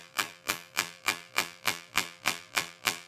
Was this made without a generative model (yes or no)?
no